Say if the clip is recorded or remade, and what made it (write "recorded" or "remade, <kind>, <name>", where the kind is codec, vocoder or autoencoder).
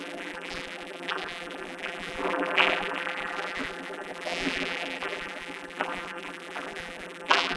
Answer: remade, vocoder, BigVGAN v2